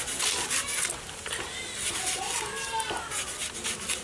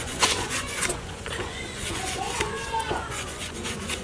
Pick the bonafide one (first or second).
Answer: first